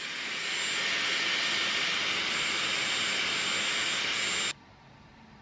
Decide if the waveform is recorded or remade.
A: recorded